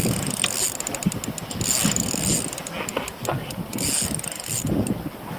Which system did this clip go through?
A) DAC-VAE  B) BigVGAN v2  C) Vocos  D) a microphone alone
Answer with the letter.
D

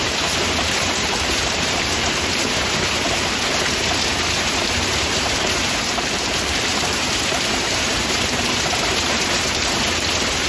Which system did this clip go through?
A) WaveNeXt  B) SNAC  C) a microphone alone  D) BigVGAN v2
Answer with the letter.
D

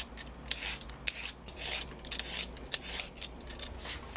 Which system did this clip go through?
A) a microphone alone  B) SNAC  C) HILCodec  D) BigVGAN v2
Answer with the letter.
A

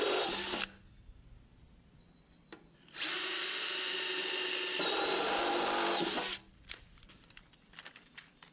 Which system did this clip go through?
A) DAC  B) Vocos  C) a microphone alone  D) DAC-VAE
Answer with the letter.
C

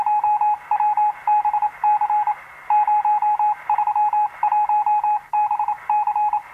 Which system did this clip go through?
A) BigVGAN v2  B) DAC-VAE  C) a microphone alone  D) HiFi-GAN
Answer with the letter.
C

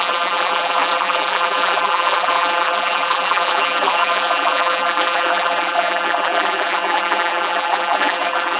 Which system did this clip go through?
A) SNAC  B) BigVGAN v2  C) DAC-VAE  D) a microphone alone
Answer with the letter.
B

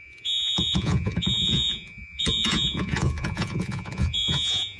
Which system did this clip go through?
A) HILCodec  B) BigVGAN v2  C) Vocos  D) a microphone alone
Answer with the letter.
C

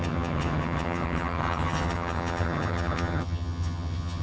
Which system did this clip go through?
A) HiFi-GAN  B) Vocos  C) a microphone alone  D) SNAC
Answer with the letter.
A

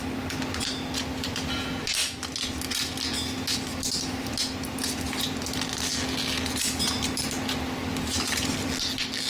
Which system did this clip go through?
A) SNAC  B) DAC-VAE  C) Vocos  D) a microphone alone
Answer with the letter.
D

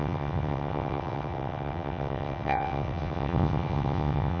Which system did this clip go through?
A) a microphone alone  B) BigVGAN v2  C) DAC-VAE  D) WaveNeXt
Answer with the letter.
D